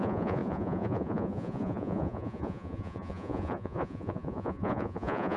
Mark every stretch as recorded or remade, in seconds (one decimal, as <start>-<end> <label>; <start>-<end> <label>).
0.0-5.4 remade